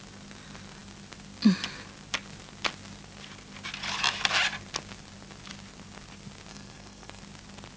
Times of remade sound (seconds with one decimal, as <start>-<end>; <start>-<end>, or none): 6.5-7.2